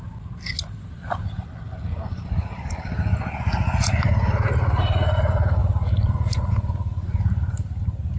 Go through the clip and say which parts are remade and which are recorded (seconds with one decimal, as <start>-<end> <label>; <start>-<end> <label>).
0.0-8.2 recorded